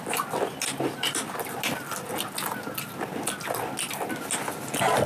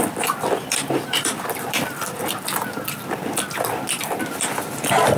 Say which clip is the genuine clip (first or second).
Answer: first